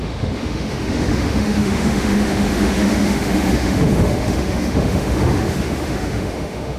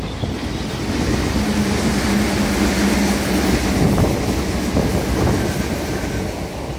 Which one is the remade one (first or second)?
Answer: first